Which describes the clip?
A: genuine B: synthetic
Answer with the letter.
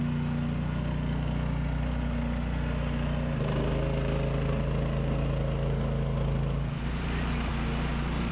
A